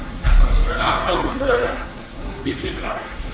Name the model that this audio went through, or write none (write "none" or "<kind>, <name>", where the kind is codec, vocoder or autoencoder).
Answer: codec, SNAC